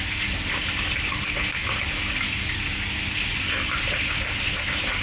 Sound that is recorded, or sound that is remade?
recorded